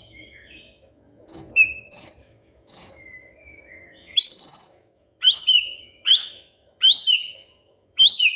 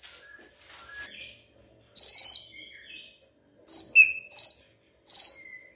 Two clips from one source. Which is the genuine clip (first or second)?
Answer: second